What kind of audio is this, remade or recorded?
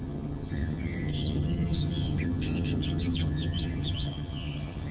remade